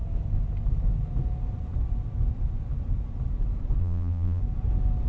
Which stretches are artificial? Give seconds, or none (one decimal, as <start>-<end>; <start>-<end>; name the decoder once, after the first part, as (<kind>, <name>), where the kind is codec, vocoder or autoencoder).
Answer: 3.8-4.4 (vocoder, BigVGAN v2)